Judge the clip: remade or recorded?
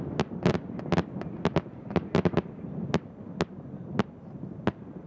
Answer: recorded